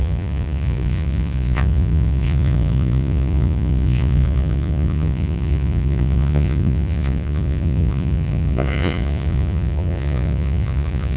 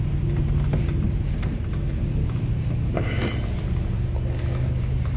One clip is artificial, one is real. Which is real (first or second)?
second